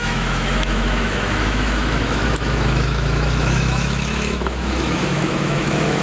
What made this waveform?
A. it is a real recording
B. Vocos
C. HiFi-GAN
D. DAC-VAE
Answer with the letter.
D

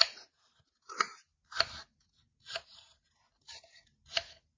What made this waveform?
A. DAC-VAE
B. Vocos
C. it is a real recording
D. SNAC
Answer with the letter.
C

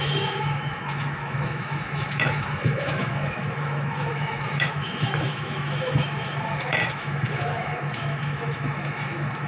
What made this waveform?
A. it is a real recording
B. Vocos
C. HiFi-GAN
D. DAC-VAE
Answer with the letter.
D